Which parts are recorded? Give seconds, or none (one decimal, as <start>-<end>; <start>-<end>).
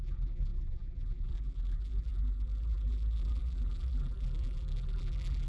none